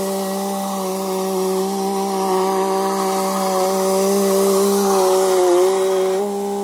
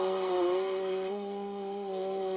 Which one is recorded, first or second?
first